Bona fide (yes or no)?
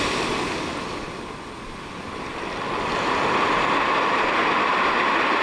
yes